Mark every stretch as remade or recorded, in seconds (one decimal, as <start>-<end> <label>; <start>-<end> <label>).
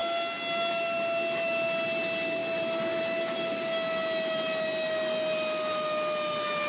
0.0-6.7 recorded